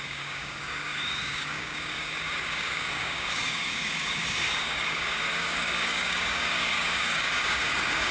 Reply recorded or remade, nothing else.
remade